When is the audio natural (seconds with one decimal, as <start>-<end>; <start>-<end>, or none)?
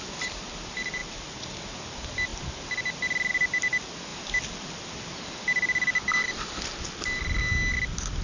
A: 0.0-8.2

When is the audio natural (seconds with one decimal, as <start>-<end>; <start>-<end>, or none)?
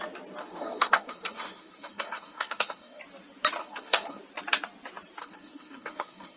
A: 0.0-0.4; 3.0-3.6; 4.2-5.2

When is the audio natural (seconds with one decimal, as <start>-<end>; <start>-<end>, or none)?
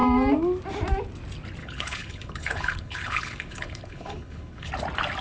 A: 0.0-1.6; 4.7-5.2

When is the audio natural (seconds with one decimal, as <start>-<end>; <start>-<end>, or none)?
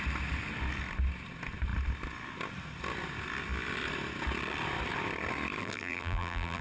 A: 0.0-5.6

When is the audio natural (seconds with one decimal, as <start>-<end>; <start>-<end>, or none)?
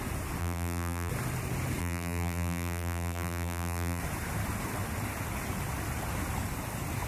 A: 0.0-0.4; 1.1-1.8; 4.0-7.1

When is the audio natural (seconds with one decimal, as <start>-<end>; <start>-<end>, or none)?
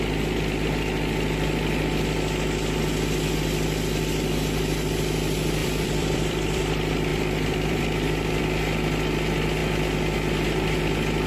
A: 0.0-5.6; 6.6-7.1; 8.4-11.3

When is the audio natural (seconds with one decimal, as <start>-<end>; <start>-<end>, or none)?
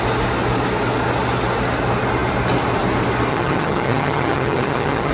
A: 0.0-3.3